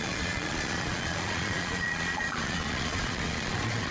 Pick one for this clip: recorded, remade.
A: remade